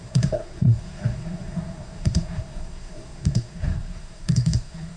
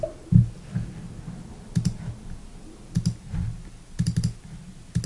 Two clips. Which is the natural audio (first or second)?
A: second